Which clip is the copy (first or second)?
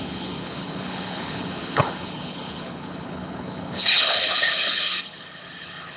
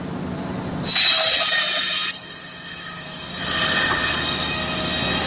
first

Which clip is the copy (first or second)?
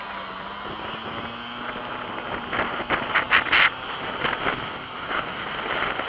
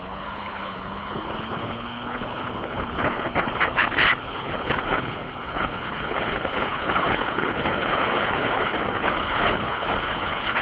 second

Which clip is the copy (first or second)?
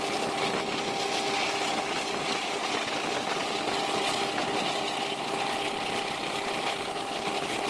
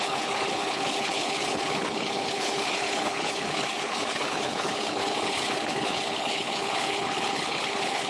second